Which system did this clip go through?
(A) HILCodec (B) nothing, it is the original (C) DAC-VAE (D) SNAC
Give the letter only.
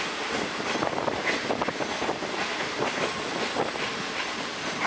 B